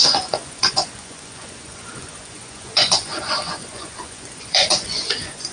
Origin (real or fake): fake